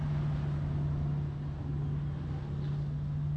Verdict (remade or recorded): recorded